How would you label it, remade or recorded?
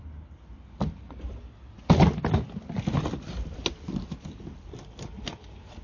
recorded